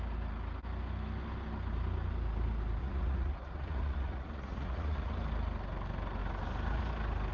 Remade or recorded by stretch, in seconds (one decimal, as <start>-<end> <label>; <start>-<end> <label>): 0.0-2.8 recorded; 2.8-5.1 remade; 5.1-7.3 recorded